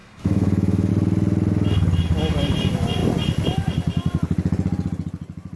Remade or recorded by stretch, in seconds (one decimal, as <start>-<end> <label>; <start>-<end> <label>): 0.0-0.9 remade; 0.9-5.6 recorded